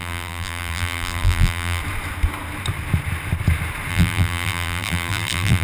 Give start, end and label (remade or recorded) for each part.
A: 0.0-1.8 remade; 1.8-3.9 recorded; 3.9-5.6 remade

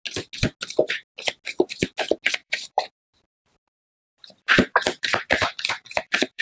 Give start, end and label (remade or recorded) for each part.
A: 0.0-2.4 recorded; 2.4-6.4 remade

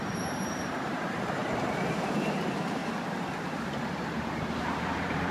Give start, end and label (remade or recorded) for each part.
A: 0.0-2.8 remade; 2.8-3.8 recorded; 3.8-5.3 remade